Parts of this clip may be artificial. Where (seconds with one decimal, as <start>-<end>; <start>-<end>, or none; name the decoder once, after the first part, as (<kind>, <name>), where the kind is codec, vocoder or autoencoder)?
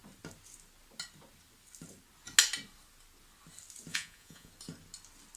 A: 3.9-4.5 (vocoder, Vocos)